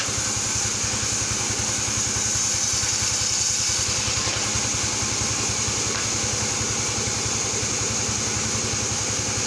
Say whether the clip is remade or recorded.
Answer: recorded